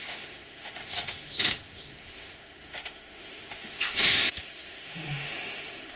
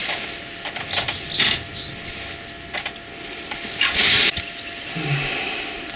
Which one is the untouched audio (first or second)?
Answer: second